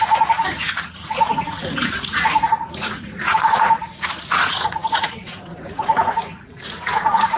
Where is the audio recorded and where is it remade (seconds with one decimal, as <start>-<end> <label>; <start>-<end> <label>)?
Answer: 0.0-7.4 remade